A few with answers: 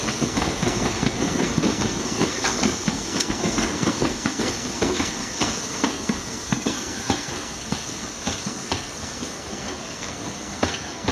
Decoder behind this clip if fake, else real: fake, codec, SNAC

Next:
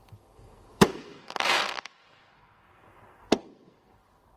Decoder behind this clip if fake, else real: fake, codec, SNAC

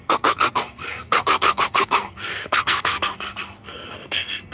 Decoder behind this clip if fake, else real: fake, codec, SNAC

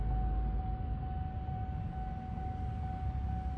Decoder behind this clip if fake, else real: real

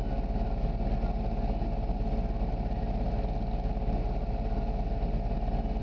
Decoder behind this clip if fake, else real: real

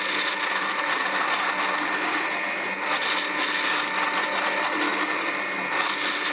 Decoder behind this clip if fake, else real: real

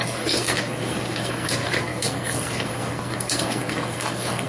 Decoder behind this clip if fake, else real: fake, codec, SNAC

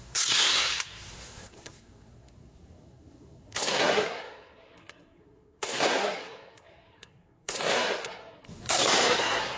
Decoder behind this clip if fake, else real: fake, codec, SNAC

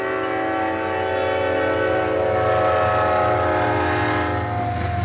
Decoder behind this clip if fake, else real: real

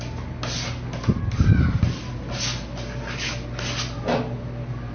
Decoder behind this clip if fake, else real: real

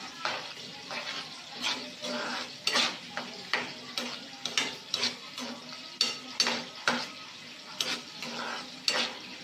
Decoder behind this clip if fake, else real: real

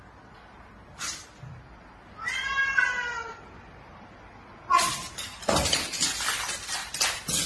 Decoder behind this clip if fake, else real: real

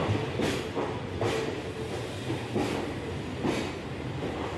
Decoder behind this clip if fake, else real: real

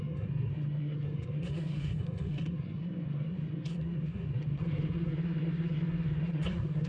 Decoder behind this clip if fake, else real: fake, codec, SNAC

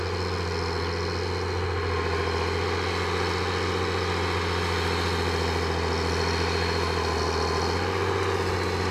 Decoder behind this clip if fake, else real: real